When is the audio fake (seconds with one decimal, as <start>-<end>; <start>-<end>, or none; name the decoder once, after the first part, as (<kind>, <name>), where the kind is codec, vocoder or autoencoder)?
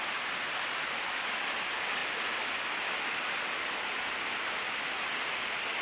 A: none